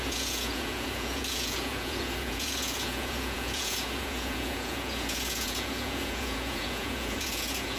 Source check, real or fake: fake